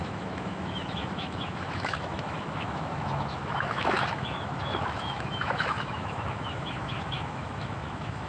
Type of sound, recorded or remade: remade